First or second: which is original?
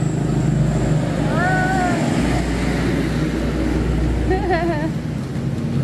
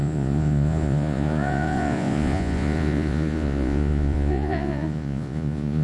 first